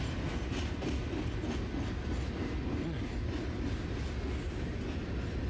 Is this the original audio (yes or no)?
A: yes